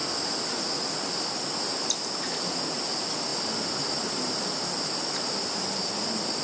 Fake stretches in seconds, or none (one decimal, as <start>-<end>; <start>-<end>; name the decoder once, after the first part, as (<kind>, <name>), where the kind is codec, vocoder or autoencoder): none